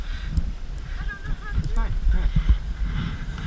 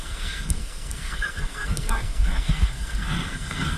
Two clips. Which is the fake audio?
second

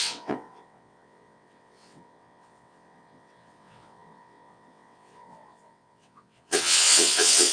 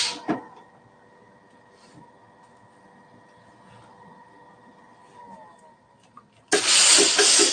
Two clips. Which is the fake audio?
first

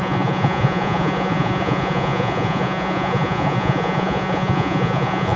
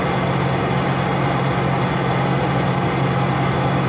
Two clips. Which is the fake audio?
first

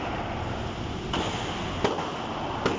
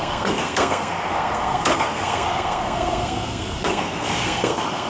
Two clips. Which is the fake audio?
second